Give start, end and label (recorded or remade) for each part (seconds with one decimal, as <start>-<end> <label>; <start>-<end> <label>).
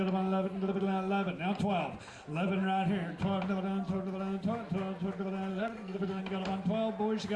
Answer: 0.0-5.5 recorded; 5.5-6.2 remade; 6.2-7.4 recorded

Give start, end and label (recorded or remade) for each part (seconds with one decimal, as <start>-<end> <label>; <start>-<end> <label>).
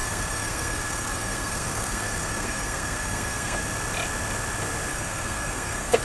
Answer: 0.0-3.6 remade; 3.6-4.9 recorded; 4.9-6.0 remade